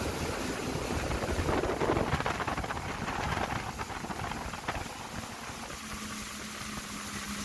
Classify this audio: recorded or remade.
recorded